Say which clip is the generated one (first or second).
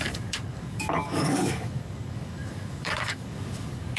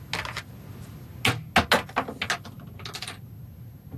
first